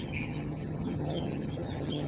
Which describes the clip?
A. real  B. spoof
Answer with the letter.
B